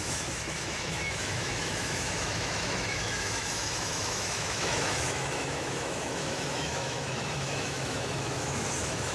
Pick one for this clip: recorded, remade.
remade